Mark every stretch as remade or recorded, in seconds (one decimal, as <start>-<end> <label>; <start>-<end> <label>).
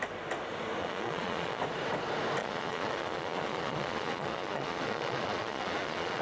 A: 0.0-0.8 recorded; 0.8-1.6 remade; 1.6-2.4 recorded; 2.4-6.2 remade